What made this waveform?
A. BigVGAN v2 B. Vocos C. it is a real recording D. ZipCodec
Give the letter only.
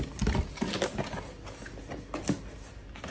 C